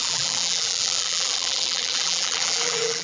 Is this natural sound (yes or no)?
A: no